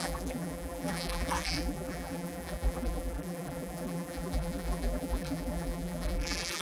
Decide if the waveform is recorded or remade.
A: remade